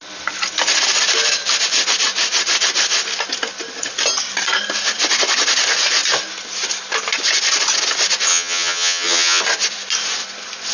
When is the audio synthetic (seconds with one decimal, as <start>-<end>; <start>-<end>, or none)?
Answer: 8.3-9.4